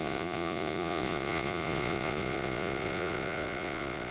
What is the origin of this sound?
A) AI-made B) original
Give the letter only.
A